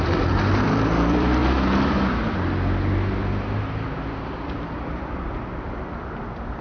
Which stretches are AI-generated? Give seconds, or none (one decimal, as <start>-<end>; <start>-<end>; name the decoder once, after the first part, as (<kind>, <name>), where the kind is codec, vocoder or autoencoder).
0.0-1.4 (vocoder, BigVGAN v2); 4.7-6.6